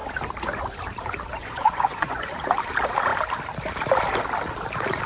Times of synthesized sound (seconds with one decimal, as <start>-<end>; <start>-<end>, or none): 1.4-2.3

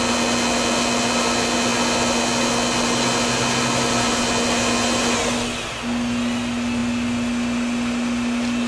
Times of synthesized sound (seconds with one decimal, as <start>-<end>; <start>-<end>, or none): none

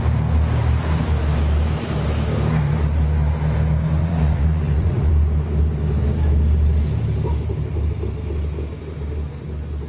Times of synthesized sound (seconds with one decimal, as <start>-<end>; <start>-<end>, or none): 4.0-5.1